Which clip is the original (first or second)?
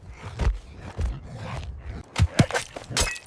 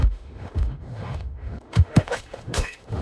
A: first